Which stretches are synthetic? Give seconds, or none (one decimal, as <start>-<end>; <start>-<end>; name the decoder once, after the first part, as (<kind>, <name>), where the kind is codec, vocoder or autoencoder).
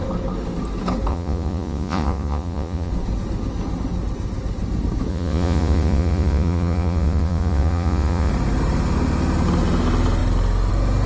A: 1.1-2.9 (vocoder, Vocos); 5.1-8.3